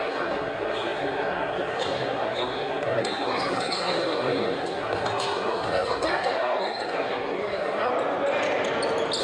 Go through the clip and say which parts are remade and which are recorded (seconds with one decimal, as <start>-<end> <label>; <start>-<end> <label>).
0.0-7.9 remade; 7.9-9.2 recorded